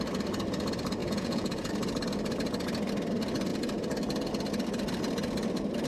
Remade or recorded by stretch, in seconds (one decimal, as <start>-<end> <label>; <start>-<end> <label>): 0.0-1.0 recorded; 1.0-1.7 remade; 1.7-5.9 recorded